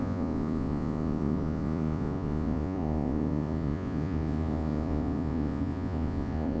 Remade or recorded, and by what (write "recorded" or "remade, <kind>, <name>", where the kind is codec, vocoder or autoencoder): remade, vocoder, Vocos